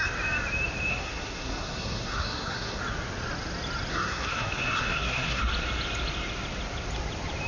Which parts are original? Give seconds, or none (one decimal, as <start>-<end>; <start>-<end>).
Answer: 0.0-0.9; 2.8-3.9; 5.4-7.5